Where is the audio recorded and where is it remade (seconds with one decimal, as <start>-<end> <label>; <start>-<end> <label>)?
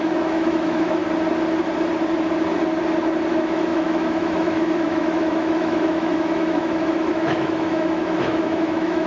0.0-1.0 remade; 1.0-3.3 recorded; 3.3-9.1 remade